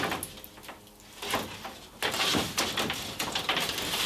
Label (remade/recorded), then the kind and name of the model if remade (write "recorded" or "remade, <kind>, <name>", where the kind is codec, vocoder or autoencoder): recorded